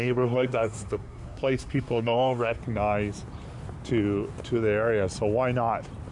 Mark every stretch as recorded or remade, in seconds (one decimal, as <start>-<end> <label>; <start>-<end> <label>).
0.0-2.6 remade; 2.6-6.1 recorded